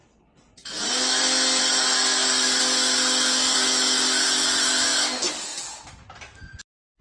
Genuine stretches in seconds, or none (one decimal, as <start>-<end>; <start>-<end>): 0.0-7.0